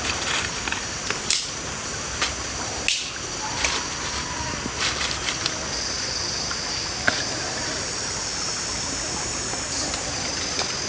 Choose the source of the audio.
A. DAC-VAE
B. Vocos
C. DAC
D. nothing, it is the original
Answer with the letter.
D